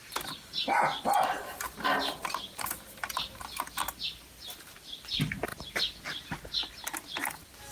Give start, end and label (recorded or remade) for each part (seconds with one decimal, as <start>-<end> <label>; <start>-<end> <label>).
0.0-1.9 recorded; 1.9-4.7 remade; 4.7-7.7 recorded